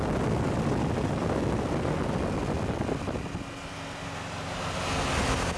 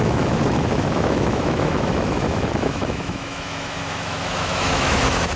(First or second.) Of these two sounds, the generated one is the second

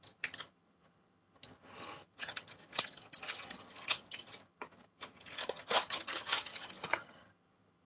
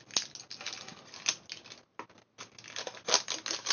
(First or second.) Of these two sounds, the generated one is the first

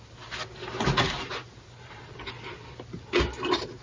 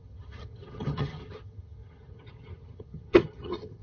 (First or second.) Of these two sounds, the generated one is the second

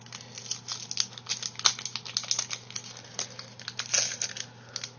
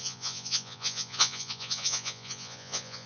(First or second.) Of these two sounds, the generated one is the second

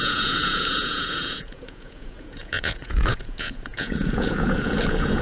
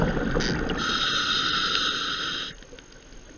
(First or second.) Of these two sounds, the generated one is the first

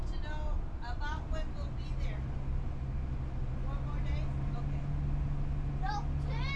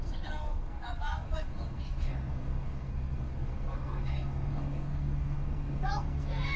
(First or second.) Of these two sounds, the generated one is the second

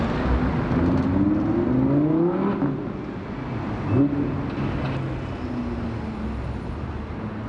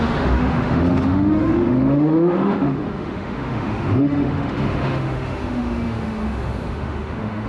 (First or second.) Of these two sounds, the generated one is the second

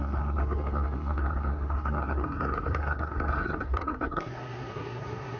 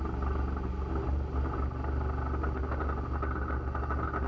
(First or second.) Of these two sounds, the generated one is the first